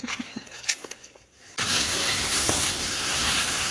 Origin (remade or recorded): remade